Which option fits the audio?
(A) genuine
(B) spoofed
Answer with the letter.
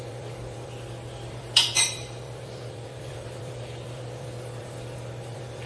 B